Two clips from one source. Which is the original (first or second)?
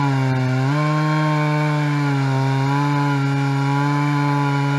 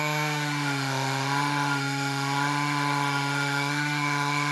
first